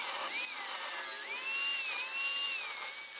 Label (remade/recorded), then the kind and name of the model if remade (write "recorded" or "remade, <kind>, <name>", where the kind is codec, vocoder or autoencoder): recorded